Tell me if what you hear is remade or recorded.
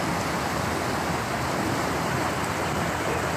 recorded